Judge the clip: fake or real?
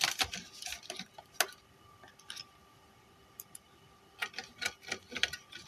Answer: real